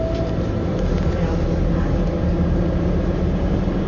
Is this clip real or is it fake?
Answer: real